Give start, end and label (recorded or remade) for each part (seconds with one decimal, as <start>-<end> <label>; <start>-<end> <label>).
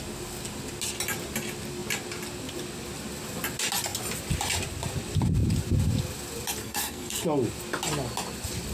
0.0-6.6 recorded; 6.6-7.2 remade; 7.2-8.7 recorded